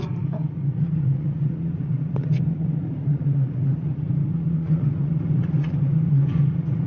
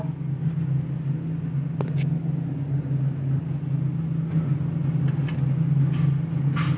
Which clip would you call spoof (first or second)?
first